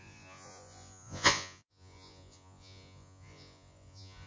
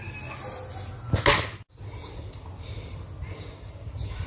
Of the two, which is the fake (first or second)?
first